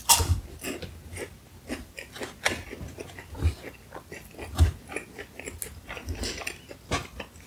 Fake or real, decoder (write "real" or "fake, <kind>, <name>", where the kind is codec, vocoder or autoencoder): real